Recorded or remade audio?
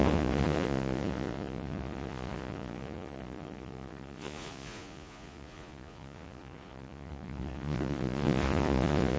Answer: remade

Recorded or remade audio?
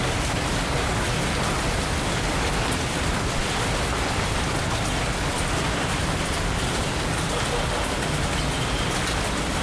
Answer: recorded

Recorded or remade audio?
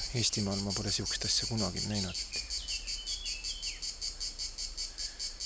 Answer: recorded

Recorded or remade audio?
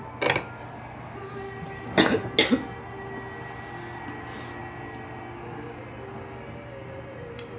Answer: recorded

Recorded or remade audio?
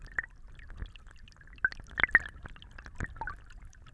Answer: recorded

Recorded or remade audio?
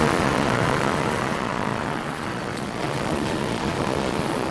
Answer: remade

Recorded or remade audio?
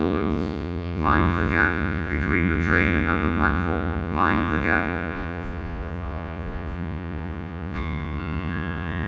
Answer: remade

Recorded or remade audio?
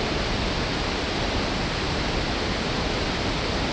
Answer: recorded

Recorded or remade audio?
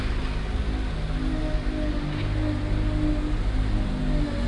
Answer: recorded